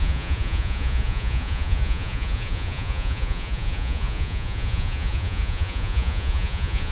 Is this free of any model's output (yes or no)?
no